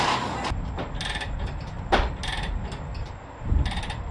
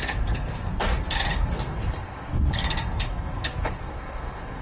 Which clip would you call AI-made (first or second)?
second